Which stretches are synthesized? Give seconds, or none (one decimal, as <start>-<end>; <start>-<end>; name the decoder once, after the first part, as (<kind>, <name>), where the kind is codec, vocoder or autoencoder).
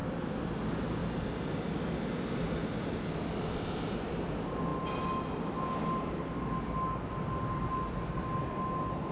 none